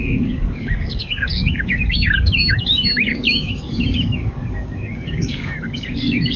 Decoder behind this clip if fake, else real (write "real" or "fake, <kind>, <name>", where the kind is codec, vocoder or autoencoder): fake, codec, DAC